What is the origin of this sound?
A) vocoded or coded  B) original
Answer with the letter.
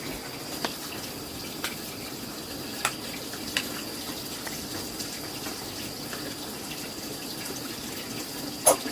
B